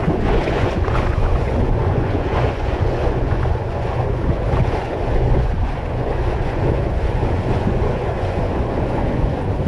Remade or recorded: remade